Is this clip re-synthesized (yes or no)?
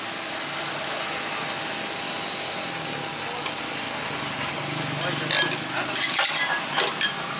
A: no